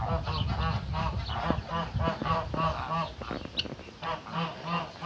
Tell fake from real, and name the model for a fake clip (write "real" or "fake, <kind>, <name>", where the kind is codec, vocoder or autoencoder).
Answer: real